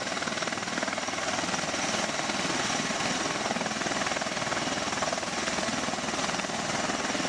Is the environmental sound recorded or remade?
recorded